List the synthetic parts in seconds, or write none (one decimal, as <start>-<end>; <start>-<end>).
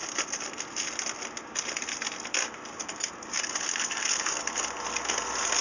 none